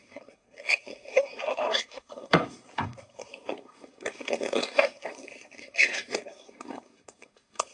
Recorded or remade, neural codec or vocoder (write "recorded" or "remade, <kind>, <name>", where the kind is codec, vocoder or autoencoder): remade, codec, SNAC